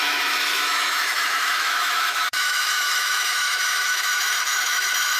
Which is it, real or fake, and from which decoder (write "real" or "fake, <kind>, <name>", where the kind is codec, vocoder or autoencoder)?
fake, autoencoder, DAC-VAE